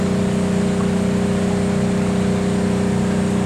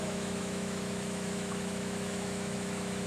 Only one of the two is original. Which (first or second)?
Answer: first